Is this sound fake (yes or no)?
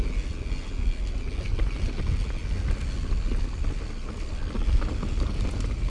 no